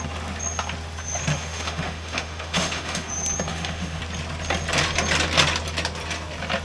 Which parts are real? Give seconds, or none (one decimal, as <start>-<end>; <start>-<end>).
0.0-1.3; 3.1-3.5; 4.0-6.6

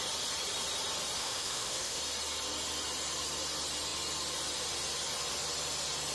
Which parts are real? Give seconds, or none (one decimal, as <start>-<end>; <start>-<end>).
0.0-1.2; 2.0-6.1

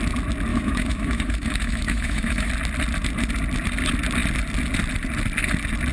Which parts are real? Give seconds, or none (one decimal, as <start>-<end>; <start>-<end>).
0.0-0.5; 2.5-5.9

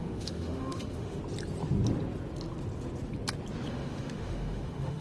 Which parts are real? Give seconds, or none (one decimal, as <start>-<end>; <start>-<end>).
1.2-3.7

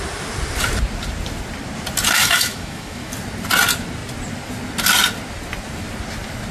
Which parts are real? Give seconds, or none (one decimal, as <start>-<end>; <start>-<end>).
0.0-2.2; 3.1-6.5

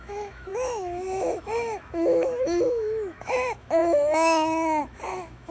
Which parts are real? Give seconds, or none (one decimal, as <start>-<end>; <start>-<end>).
none